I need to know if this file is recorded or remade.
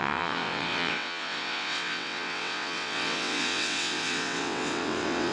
remade